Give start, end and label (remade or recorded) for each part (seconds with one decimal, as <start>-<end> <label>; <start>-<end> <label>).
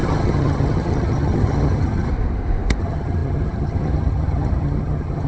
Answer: 0.0-2.1 remade; 2.1-2.8 recorded; 2.8-5.3 remade